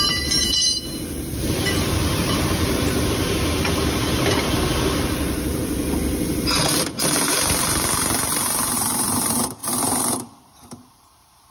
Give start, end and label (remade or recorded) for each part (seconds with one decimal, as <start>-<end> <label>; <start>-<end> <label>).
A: 0.0-11.5 remade